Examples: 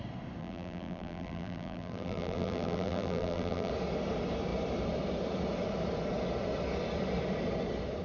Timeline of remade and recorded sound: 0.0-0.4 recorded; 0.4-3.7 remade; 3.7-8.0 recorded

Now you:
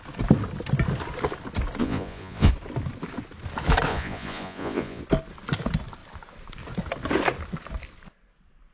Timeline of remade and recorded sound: 0.0-1.8 recorded; 1.8-2.5 remade; 2.5-3.9 recorded; 3.9-5.0 remade; 5.0-8.7 recorded

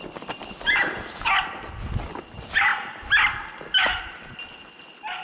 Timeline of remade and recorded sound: 0.0-5.2 recorded